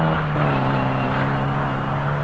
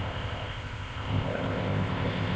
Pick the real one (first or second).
first